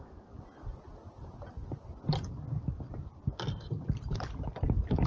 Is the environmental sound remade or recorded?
recorded